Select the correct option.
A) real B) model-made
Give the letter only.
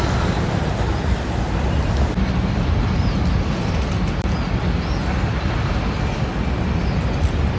A